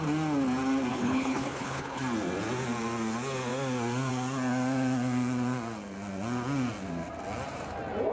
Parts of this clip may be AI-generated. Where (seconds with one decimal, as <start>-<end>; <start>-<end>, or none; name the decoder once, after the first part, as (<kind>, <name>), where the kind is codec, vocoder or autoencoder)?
0.9-2.0 (codec, HILCodec)